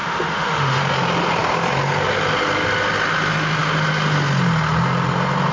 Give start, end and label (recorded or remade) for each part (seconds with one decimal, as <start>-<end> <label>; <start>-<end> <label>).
0.0-0.8 remade; 0.8-5.5 recorded